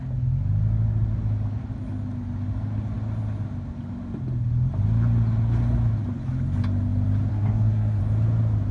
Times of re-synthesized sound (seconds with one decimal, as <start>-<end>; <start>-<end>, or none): 7.3-8.0